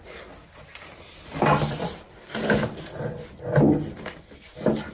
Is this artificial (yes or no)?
no